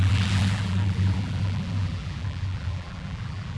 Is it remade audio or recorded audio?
remade